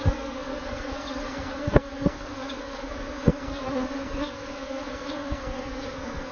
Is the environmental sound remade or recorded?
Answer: remade